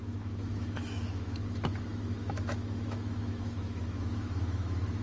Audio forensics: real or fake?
fake